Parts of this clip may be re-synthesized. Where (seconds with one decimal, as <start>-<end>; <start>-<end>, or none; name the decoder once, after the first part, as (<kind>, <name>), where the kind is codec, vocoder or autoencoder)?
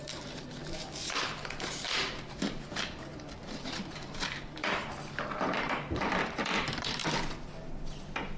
0.0-7.0 (vocoder, BigVGAN v2)